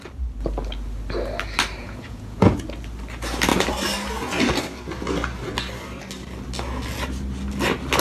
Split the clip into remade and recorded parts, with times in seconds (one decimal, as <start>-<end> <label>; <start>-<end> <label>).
0.0-1.8 recorded; 1.8-2.5 remade; 2.5-8.0 recorded